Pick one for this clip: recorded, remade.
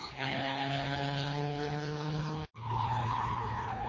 remade